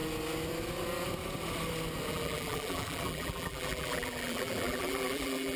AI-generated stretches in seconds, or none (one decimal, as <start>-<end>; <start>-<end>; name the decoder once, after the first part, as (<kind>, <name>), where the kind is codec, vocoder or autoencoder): 2.1-5.6 (vocoder, BigVGAN v2)